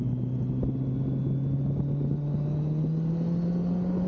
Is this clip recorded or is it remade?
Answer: recorded